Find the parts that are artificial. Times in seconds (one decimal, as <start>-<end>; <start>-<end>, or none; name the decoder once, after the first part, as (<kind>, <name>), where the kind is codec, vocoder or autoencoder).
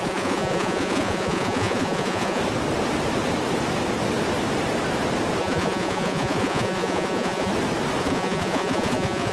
0.0-2.4 (vocoder, Vocos); 5.4-7.5; 8.0-9.3